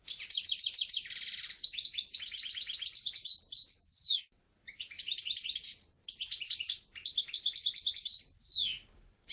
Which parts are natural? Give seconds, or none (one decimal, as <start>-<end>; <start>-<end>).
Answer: 0.0-9.3